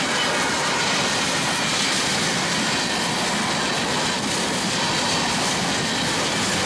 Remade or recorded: recorded